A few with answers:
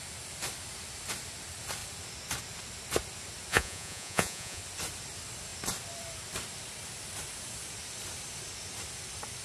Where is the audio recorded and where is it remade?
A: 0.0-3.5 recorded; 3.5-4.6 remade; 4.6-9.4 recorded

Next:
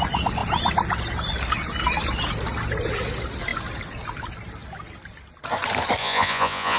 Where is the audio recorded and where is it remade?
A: 0.0-6.0 recorded; 6.0-6.8 remade

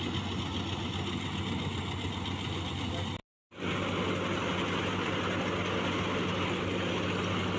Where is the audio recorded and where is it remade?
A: 0.0-7.6 recorded

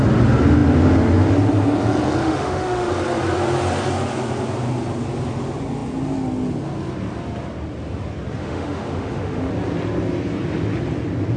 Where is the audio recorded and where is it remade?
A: 0.0-2.2 recorded; 2.2-2.9 remade; 2.9-8.4 recorded; 8.4-9.5 remade; 9.5-11.4 recorded

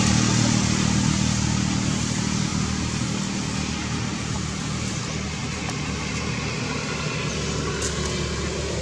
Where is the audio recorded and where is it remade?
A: 0.0-8.8 recorded